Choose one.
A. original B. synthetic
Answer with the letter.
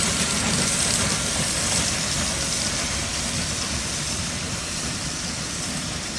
A